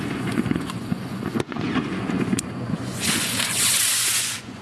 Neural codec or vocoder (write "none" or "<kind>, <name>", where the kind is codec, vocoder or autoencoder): vocoder, Vocos